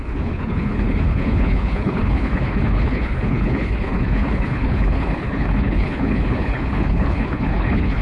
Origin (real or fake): fake